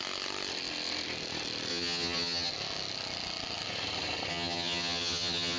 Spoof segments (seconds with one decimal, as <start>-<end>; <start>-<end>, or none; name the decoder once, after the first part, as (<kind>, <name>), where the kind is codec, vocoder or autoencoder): 1.7-2.5 (vocoder, HiFi-GAN); 4.3-5.6